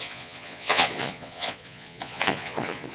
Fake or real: fake